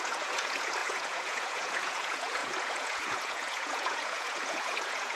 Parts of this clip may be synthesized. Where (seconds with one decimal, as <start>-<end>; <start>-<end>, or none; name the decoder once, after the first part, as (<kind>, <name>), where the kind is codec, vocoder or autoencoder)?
0.0-5.2 (vocoder, Vocos)